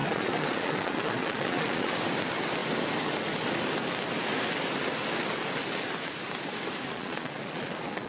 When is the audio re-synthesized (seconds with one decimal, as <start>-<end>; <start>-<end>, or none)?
0.0-1.9; 6.9-8.1